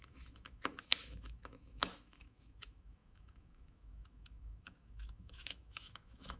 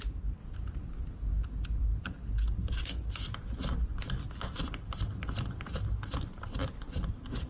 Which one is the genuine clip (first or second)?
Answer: second